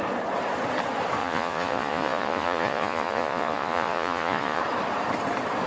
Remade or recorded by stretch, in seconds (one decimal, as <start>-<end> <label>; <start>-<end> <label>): 0.0-1.2 recorded; 1.2-4.6 remade; 4.6-5.7 recorded